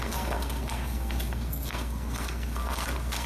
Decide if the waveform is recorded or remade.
remade